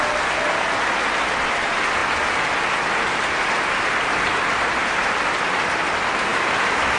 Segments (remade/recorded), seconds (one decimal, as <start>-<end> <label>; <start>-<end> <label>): 0.0-7.0 recorded